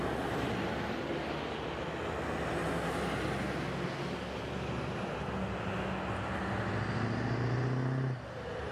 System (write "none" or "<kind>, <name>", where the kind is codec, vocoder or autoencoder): none